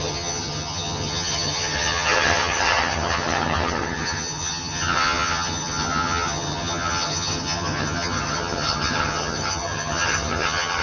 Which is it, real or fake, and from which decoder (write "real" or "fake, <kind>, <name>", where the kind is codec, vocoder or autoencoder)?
fake, vocoder, HiFi-GAN